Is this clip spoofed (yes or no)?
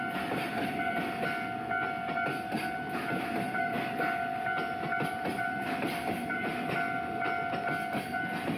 no